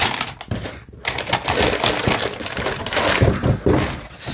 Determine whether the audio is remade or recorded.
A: recorded